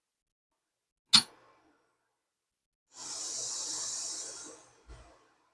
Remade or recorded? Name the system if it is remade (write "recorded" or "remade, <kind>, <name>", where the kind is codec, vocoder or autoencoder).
recorded